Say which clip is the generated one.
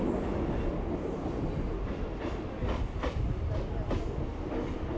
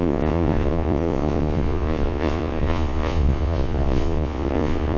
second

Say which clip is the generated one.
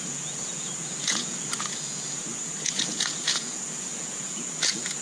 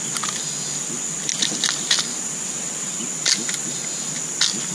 first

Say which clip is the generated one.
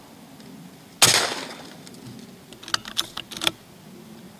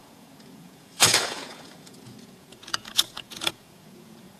second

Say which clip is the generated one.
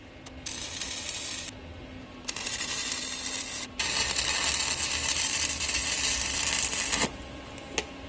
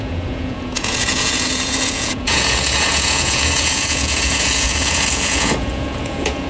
second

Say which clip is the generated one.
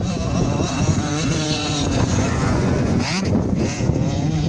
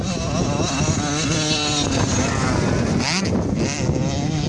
first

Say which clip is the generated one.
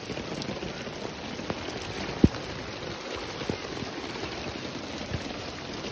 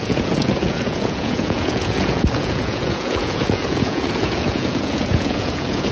second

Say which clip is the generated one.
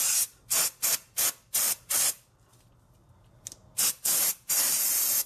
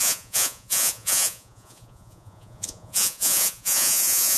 second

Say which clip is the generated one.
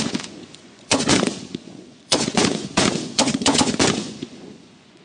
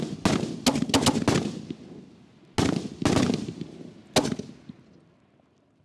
first